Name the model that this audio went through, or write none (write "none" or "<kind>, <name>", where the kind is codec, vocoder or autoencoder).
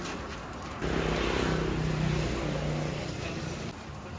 none